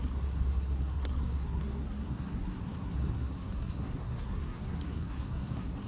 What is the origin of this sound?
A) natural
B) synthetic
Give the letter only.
B